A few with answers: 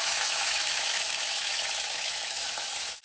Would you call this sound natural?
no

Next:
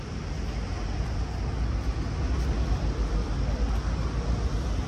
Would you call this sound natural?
yes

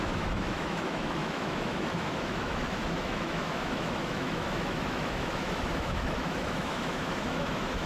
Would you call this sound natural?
no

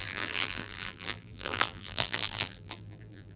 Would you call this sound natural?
no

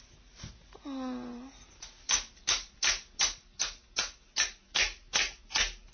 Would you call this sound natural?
yes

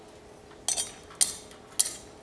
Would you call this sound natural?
yes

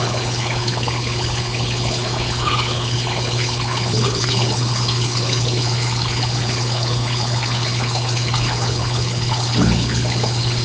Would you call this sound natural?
no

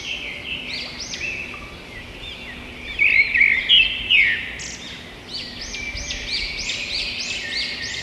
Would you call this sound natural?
yes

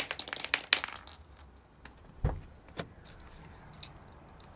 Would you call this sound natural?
yes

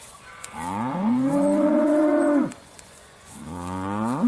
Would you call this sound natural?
no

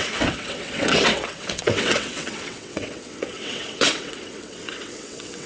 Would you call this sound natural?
no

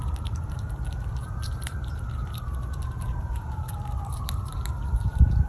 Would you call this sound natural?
no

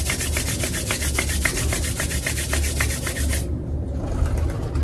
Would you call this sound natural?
yes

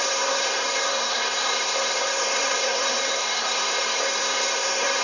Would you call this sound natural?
no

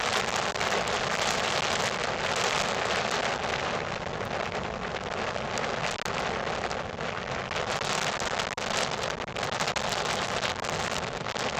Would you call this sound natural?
yes